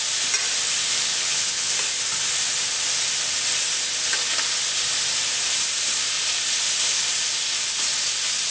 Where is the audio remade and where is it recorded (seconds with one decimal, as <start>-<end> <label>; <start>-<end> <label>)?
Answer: 0.0-1.1 recorded; 1.1-1.7 remade; 1.7-8.5 recorded